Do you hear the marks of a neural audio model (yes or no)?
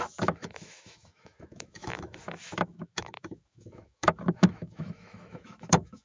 yes